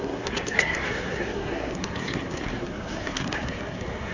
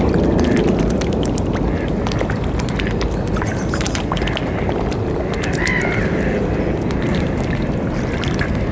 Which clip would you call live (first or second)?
second